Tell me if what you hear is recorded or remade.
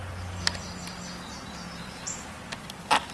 recorded